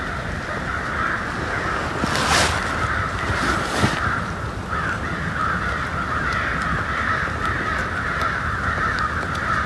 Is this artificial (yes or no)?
no